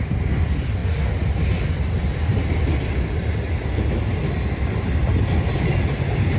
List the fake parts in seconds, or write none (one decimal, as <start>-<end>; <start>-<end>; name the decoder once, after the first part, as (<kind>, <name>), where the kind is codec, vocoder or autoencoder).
none

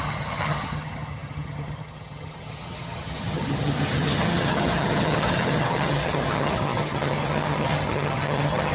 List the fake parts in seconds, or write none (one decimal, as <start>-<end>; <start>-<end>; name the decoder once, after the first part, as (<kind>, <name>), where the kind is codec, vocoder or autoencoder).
0.0-8.7 (vocoder, HiFi-GAN)

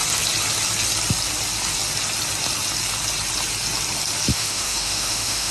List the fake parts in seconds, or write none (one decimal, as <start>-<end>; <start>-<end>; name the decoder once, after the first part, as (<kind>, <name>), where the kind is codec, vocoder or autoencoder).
4.3-5.5 (autoencoder, DAC-VAE)

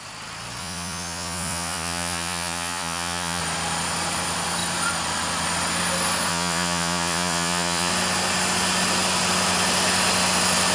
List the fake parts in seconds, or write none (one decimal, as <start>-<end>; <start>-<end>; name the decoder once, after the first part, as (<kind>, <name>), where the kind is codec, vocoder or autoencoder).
0.6-3.4 (vocoder, Vocos); 6.3-7.9